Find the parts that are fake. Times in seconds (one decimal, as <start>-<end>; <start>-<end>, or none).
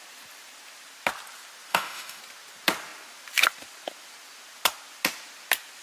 1.7-2.2